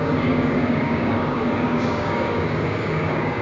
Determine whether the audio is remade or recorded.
remade